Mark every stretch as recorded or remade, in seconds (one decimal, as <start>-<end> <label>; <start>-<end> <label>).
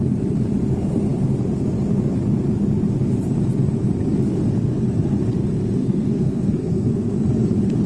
0.0-5.8 recorded; 5.8-7.1 remade; 7.1-7.9 recorded